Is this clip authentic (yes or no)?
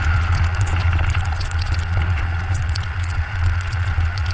no